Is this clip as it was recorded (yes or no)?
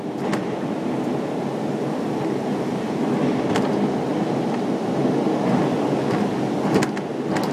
yes